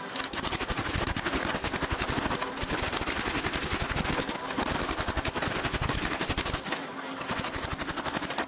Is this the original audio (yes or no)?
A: yes